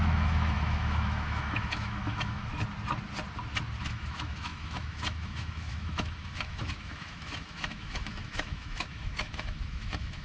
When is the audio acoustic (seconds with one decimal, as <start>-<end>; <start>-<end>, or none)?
2.5-3.8